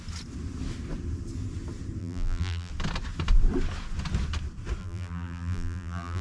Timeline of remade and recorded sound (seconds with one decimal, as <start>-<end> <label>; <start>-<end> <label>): 0.0-2.0 recorded; 2.0-2.7 remade; 2.7-4.8 recorded; 4.8-6.2 remade